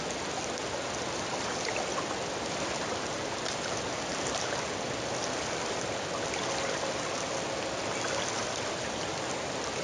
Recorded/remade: recorded